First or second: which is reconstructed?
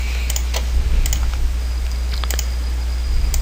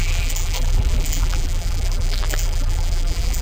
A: second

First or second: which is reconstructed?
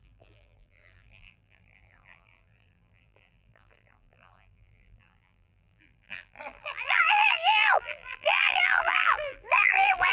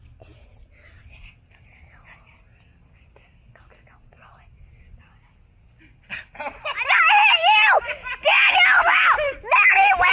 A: first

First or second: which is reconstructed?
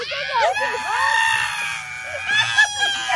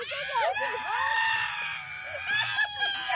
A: second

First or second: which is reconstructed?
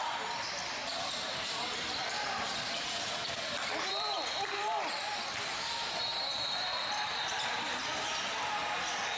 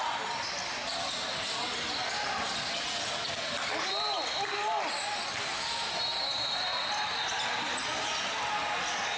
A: first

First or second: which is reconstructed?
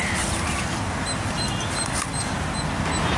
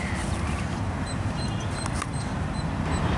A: second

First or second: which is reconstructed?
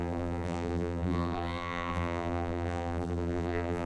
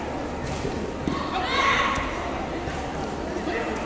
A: first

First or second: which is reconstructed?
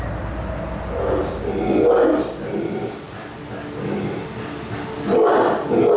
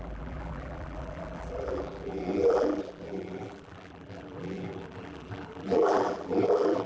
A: second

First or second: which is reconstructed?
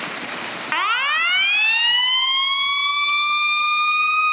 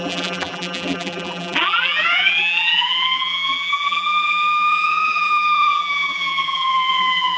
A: second